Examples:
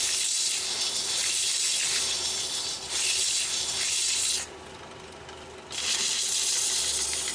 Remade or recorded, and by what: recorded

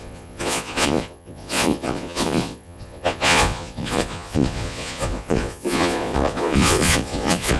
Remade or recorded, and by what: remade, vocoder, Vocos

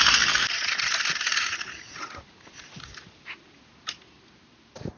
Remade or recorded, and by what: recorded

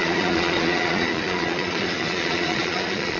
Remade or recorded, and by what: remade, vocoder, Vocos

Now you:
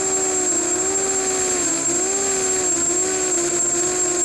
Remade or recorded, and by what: recorded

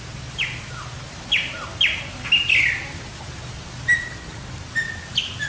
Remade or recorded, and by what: recorded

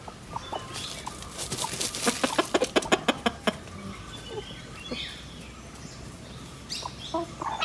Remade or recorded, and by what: recorded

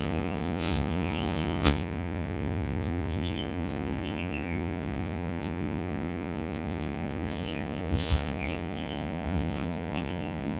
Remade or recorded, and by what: remade, vocoder, Vocos